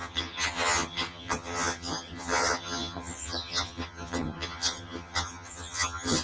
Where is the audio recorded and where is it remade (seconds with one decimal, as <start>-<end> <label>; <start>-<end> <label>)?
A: 0.0-6.2 remade